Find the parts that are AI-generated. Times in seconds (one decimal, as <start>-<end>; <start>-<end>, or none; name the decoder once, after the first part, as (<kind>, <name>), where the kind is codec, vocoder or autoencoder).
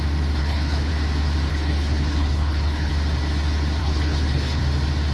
0.4-0.9 (codec, HILCodec); 1.5-2.9; 3.8-4.6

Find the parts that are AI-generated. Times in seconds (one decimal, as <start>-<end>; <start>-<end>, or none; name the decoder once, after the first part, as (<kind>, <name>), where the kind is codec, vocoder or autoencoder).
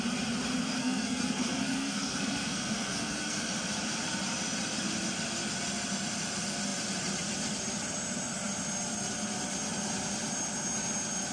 0.8-3.5 (codec, SNAC)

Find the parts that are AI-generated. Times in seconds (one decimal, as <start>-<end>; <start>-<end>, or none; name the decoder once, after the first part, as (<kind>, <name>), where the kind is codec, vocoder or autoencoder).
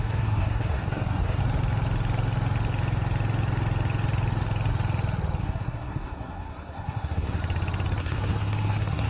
0.0-1.4 (codec, SNAC); 5.4-7.4; 8.0-9.1